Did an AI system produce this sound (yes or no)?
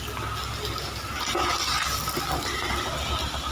no